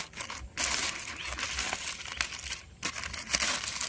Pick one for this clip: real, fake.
real